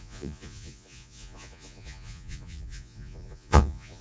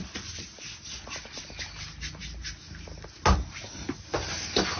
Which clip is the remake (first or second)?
first